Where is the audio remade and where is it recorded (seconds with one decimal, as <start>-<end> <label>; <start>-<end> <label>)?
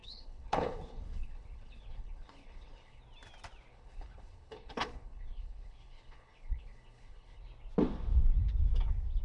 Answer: 0.0-3.0 remade; 3.0-3.7 recorded; 3.7-7.4 remade; 7.4-9.2 recorded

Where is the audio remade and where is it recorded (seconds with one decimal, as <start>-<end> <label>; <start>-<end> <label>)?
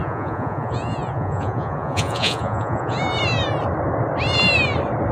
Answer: 0.0-3.0 remade; 3.0-5.1 recorded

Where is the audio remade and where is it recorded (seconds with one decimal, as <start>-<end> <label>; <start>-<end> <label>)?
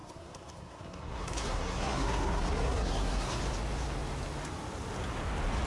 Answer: 0.0-3.4 remade; 3.4-5.7 recorded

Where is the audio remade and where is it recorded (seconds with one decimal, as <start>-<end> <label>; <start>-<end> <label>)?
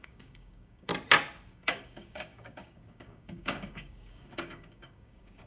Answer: 0.0-0.9 remade; 0.9-1.5 recorded; 1.5-5.5 remade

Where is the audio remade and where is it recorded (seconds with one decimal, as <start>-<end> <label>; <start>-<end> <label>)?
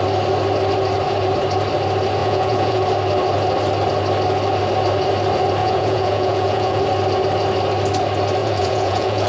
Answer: 0.0-2.2 recorded; 2.2-2.8 remade; 2.8-5.6 recorded; 5.6-6.8 remade; 6.8-8.4 recorded; 8.4-9.3 remade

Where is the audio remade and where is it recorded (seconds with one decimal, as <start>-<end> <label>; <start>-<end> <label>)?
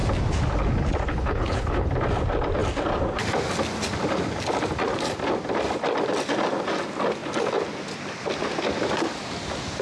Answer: 0.0-1.1 recorded; 1.1-1.9 remade; 1.9-9.8 recorded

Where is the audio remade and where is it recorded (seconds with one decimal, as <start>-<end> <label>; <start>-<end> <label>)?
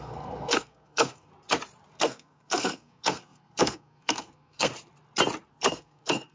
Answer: 0.0-1.3 remade; 1.3-2.0 recorded; 2.0-4.7 remade; 4.7-5.5 recorded; 5.5-6.3 remade